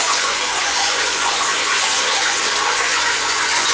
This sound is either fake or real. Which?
fake